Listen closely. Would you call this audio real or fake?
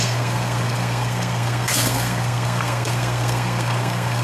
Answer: fake